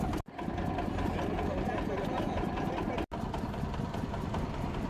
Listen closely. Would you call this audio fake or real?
real